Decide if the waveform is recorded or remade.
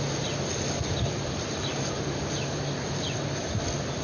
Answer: recorded